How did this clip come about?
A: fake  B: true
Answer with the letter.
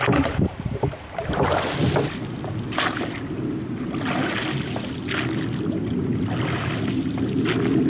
B